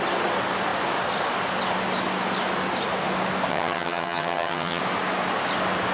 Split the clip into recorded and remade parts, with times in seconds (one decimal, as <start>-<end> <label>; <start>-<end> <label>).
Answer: 0.0-3.5 recorded; 3.5-4.8 remade; 4.8-5.9 recorded